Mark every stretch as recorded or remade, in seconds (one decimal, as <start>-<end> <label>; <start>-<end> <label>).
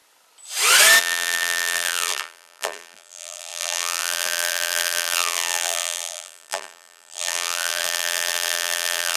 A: 0.0-1.0 recorded; 1.0-9.2 remade